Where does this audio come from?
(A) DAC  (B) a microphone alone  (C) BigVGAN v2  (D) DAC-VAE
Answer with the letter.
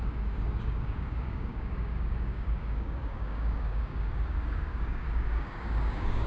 A